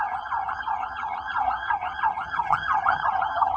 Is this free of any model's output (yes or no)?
no